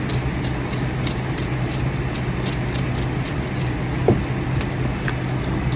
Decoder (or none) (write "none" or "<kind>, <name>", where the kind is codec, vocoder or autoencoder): none